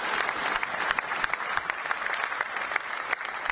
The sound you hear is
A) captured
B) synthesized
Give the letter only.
A